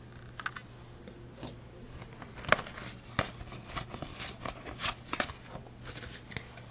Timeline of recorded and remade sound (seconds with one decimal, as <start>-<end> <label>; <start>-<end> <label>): 0.0-1.4 recorded; 1.4-2.0 remade; 2.0-6.7 recorded